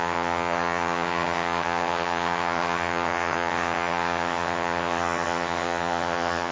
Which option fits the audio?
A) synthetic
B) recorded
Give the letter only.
A